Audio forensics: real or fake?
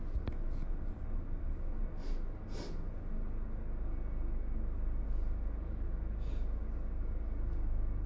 real